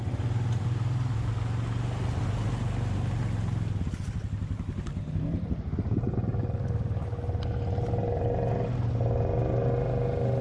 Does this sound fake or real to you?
real